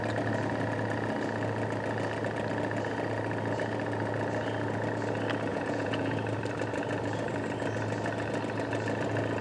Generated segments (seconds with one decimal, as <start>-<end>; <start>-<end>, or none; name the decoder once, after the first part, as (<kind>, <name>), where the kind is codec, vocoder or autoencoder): 5.5-6.1 (vocoder, Vocos)

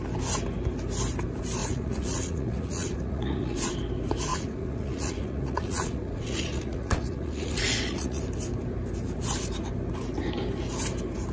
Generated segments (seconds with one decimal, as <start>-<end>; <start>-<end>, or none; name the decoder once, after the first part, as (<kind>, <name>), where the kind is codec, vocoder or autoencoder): 1.6-3.7 (vocoder, Vocos); 4.3-8.2

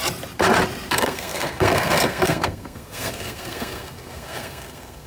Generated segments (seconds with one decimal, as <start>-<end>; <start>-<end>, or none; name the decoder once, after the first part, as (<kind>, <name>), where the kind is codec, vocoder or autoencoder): 0.9-5.1 (codec, SNAC)